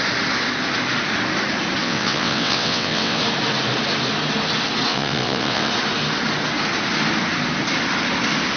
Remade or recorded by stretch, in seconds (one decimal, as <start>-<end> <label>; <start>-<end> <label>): 0.0-1.8 recorded; 1.8-3.2 remade; 3.2-4.9 recorded; 4.9-5.7 remade; 5.7-8.6 recorded